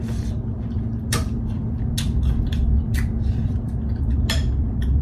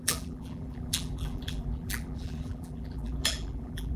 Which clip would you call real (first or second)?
first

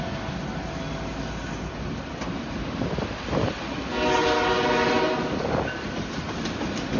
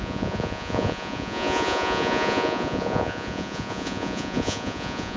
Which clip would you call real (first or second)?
first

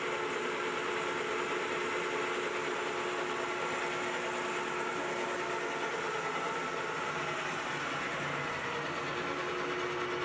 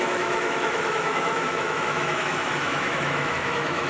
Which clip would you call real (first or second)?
first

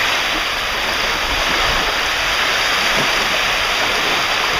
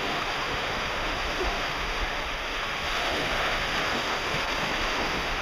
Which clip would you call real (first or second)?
first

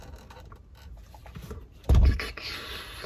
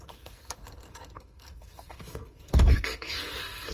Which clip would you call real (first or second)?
first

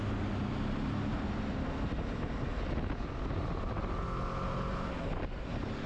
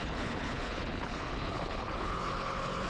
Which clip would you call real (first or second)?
first